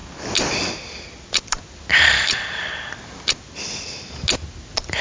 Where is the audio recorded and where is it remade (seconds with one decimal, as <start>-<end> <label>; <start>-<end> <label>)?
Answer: 0.0-5.0 recorded